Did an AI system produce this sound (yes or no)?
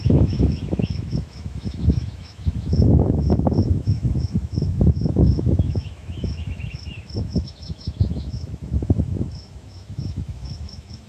yes